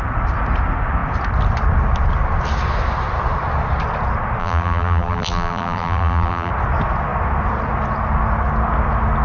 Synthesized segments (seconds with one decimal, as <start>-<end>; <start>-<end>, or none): 4.4-6.5